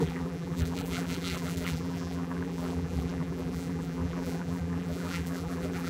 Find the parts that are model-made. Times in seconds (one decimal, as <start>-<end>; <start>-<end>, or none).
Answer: 0.0-5.9